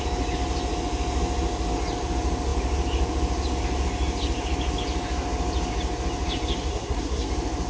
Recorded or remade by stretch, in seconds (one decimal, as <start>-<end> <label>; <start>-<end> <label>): 0.0-6.7 recorded; 6.7-7.3 remade; 7.3-7.7 recorded